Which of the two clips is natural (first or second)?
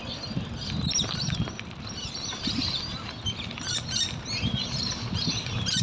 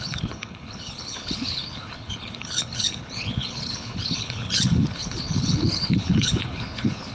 first